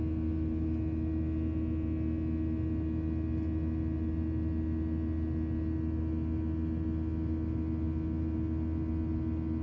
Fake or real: real